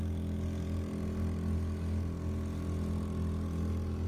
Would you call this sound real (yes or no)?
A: yes